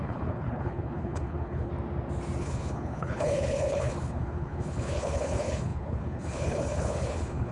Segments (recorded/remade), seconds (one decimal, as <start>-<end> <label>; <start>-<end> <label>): 0.0-1.7 remade; 1.7-2.4 recorded; 2.4-7.5 remade